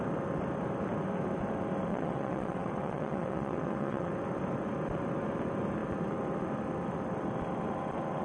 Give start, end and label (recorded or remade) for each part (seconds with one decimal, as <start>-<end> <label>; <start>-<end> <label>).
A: 0.0-1.9 recorded; 1.9-4.1 remade; 4.1-8.2 recorded